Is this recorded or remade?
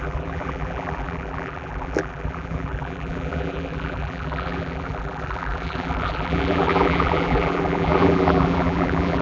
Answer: remade